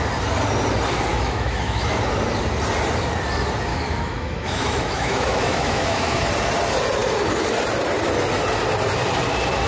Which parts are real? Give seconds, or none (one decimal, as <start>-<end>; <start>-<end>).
0.0-1.1; 1.9-3.7; 6.3-9.7